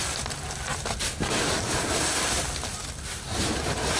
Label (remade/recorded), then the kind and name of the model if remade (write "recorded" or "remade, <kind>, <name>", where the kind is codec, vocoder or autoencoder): recorded